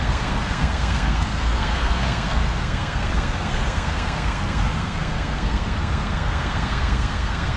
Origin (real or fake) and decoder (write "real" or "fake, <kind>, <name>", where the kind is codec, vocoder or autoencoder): fake, codec, SNAC